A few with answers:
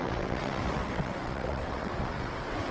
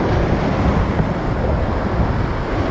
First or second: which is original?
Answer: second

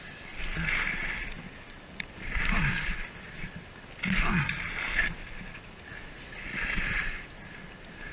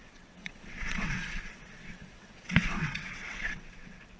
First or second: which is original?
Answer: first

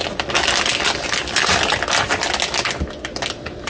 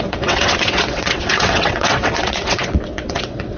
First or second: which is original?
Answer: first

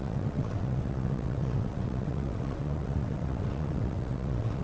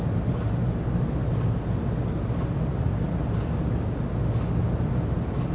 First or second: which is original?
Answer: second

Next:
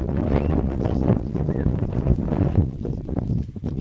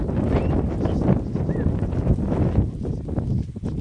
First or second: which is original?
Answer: second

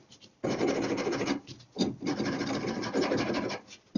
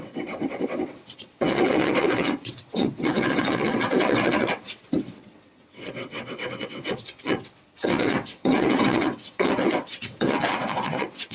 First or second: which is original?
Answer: first